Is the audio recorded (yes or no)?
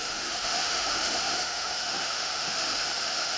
no